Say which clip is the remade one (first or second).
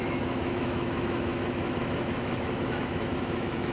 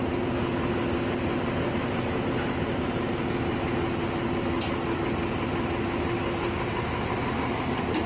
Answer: first